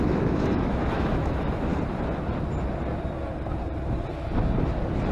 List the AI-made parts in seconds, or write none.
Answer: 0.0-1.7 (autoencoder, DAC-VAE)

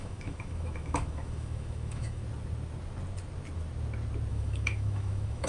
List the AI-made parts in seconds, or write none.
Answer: 0.0-2.2 (autoencoder, DAC-VAE); 4.3-5.5

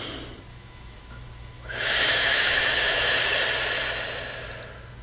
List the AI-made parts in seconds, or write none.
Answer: 0.5-3.2 (autoencoder, DAC-VAE)

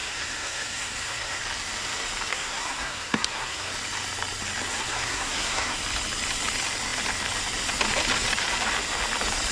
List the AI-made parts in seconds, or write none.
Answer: 0.0-1.4 (codec, SNAC); 2.3-3.7; 4.7-5.8

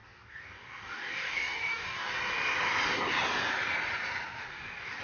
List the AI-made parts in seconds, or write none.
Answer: 0.0-2.1 (codec, DAC); 4.4-5.0

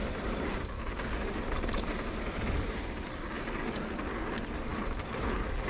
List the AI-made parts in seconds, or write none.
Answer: none